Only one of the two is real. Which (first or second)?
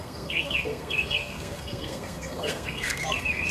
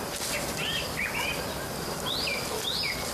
second